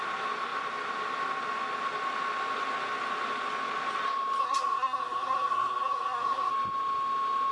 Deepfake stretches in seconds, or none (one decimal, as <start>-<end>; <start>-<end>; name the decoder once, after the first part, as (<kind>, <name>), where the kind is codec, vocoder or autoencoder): 4.4-6.5 (codec, SNAC)